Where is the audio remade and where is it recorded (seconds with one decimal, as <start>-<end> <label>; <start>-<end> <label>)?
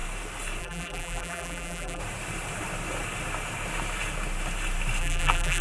0.0-0.6 recorded; 0.6-2.0 remade; 2.0-5.0 recorded; 5.0-5.6 remade